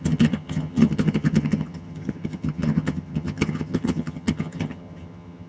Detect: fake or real fake